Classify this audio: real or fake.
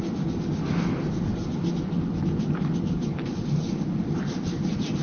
real